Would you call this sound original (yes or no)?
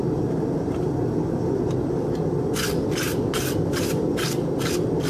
yes